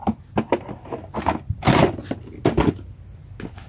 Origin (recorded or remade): recorded